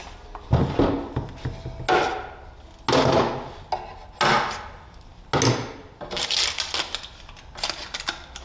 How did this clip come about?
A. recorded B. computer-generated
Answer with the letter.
A